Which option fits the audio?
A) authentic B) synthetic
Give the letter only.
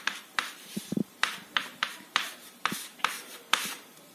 B